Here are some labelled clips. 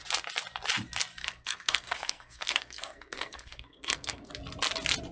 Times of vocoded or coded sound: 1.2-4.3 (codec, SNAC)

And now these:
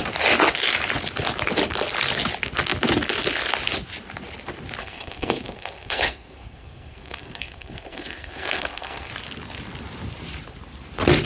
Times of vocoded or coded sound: 4.8-9.1 (codec, SNAC)

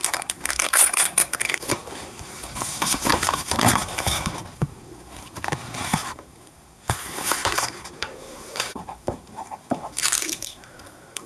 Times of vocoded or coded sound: 0.0-11.3 (codec, SNAC)

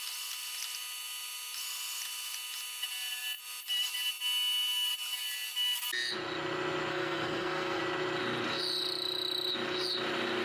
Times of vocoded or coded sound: 6.9-7.8 (codec, SNAC)

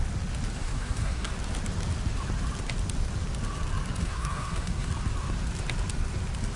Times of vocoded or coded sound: 0.6-1.3 (codec, SNAC); 4.0-4.9

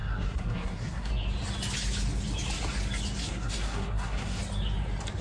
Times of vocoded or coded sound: 0.0-1.1 (codec, SNAC); 3.2-4.4